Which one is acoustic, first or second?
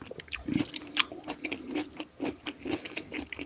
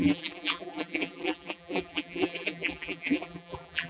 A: first